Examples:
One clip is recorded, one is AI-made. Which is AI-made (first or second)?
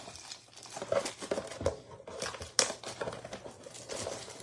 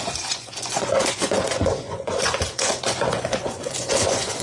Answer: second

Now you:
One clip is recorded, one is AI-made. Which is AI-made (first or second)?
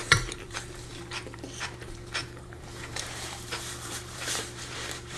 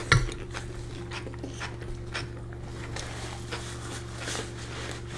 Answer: first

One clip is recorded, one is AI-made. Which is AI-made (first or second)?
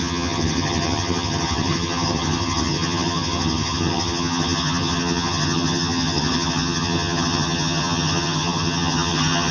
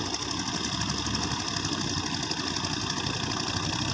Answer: first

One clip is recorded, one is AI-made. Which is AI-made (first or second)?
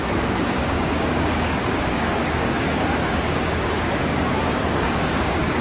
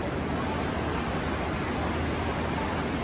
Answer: first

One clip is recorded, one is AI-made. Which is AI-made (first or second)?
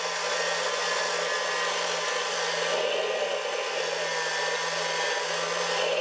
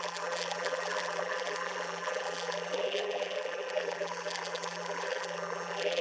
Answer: second